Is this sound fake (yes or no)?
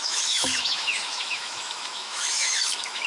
yes